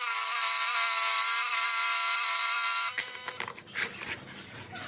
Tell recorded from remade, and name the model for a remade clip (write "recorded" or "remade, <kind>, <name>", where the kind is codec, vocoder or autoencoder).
remade, vocoder, BigVGAN v2